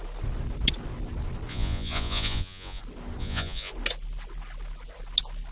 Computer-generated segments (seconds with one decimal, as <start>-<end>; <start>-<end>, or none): 1.5-2.8; 3.2-3.7